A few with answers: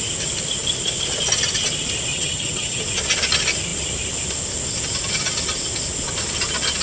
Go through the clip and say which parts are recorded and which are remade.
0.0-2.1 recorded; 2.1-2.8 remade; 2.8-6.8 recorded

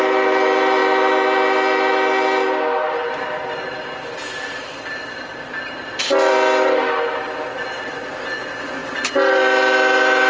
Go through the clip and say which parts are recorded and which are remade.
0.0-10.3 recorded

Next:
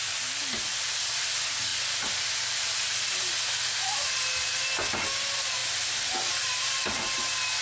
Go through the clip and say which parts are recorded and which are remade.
0.0-7.6 recorded